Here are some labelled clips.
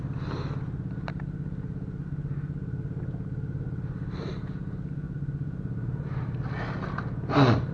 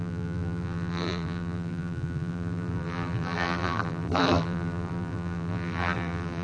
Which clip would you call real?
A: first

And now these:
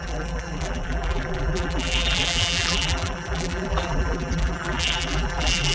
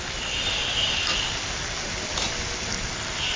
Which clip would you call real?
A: second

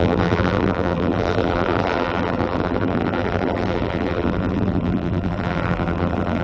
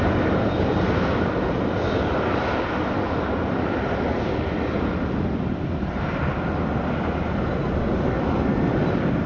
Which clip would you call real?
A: second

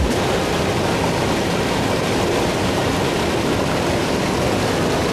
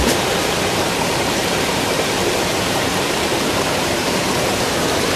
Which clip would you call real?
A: first